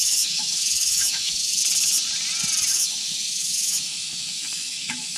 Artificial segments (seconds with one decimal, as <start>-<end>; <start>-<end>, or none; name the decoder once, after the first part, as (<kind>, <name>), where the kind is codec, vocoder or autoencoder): 0.0-1.6 (autoencoder, DAC-VAE); 2.7-5.2